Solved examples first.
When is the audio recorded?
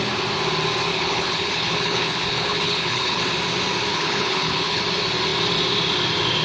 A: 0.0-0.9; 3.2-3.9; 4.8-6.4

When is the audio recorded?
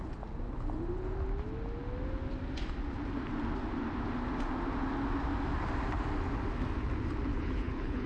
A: 0.0-7.3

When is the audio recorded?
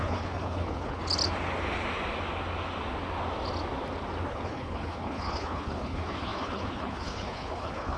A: 1.0-4.3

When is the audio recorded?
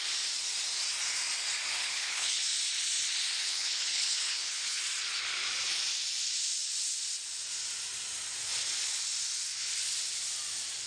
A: 0.0-1.8; 2.4-3.4; 4.8-10.9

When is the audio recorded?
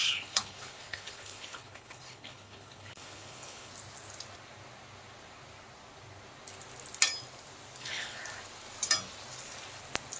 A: 3.7-7.8; 8.2-10.2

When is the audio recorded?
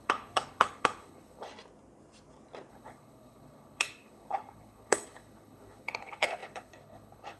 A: 1.5-2.7